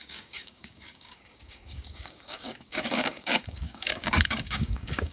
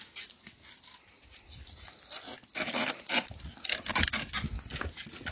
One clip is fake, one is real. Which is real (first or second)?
second